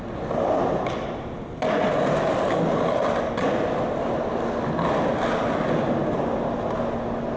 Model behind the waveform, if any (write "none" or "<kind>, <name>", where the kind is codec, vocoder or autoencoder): none